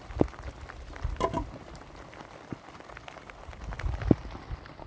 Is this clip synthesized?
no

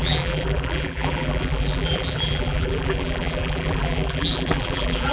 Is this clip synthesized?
yes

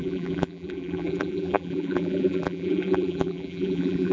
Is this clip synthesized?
yes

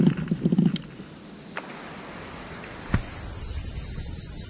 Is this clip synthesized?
no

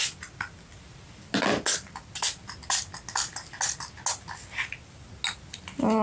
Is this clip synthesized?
no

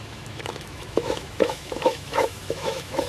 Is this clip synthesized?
yes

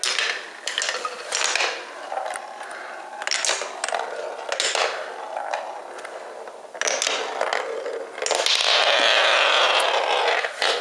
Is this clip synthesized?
no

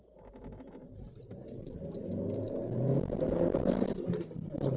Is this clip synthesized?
no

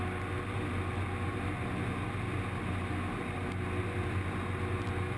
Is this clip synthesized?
no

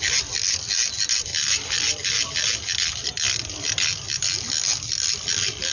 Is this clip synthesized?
yes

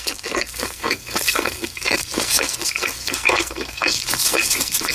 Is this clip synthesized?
yes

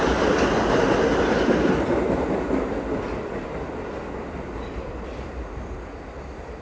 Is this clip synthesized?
no